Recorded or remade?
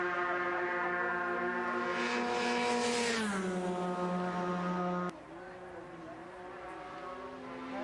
recorded